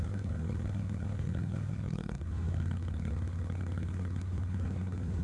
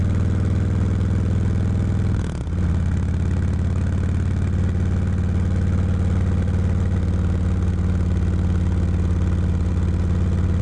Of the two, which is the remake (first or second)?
first